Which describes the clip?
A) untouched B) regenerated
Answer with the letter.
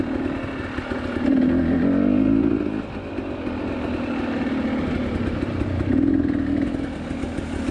A